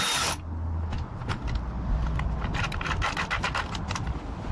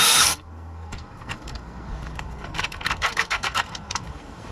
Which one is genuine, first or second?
first